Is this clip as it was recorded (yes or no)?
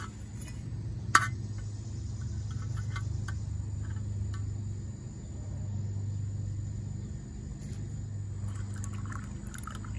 yes